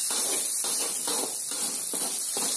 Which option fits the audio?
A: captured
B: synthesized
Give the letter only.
A